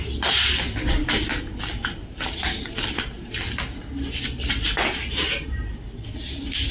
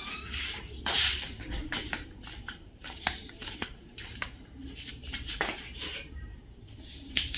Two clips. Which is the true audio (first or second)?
first